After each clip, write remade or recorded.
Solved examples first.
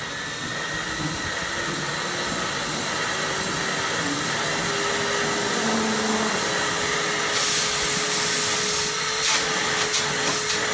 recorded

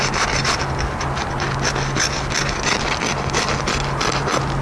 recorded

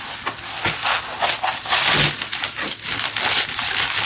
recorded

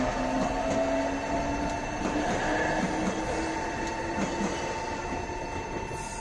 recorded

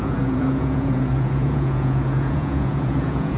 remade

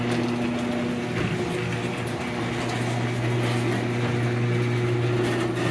recorded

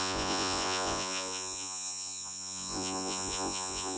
remade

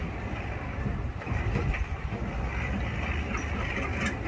recorded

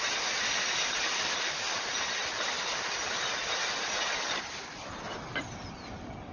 recorded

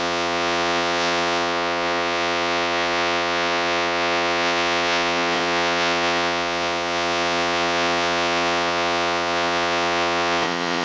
remade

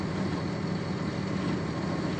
recorded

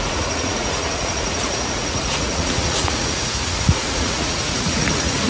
remade